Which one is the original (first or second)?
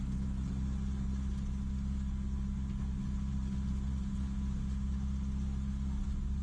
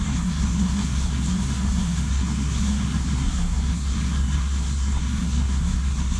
first